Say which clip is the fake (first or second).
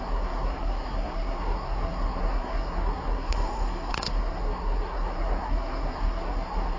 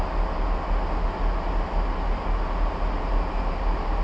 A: first